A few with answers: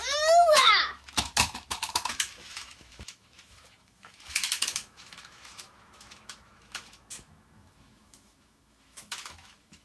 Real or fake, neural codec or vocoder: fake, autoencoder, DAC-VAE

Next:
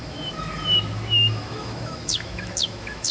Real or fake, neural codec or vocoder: fake, autoencoder, DAC-VAE